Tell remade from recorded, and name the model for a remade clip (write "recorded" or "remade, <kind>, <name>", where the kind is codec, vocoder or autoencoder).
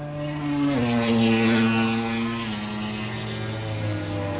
recorded